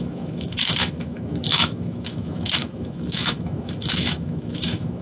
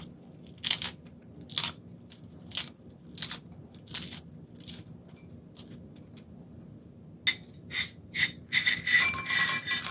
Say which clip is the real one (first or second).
second